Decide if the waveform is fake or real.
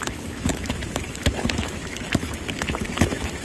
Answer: fake